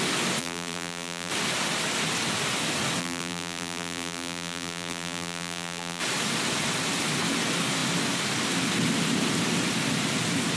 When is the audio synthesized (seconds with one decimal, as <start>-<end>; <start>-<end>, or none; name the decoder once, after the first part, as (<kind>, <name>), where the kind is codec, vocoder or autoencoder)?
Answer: 0.4-1.3 (vocoder, BigVGAN v2); 3.0-6.0